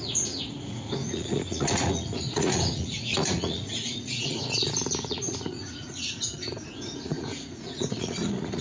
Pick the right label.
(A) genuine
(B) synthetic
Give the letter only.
B